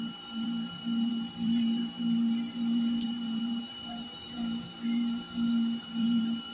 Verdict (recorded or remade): remade